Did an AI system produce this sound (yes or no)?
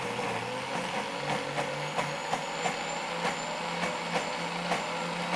no